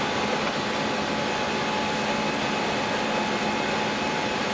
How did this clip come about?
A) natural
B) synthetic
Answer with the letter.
A